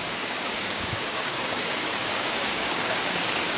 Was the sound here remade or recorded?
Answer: remade